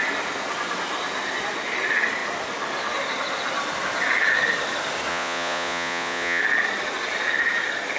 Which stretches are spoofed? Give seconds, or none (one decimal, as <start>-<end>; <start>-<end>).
5.1-6.4